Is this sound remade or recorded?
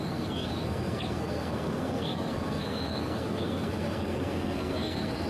remade